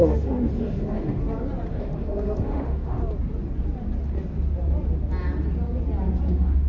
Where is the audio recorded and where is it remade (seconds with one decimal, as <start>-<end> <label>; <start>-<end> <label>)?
0.0-1.2 remade; 1.2-1.7 recorded; 1.7-3.0 remade; 3.0-6.3 recorded; 6.3-6.7 remade